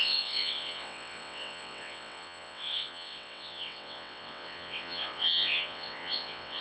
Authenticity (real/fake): fake